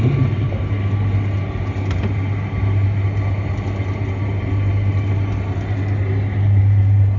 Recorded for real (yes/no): yes